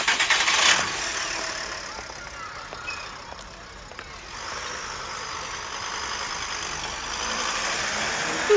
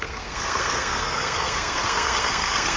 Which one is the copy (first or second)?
second